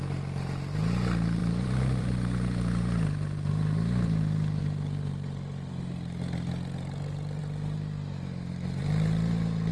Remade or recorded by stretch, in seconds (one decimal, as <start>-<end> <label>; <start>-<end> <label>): 0.0-1.4 recorded; 1.4-3.5 remade; 3.5-4.6 recorded; 4.6-5.7 remade; 5.7-7.4 recorded; 7.4-8.8 remade; 8.8-9.7 recorded